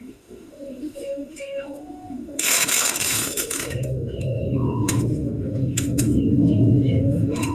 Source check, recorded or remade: remade